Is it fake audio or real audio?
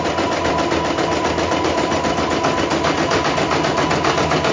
fake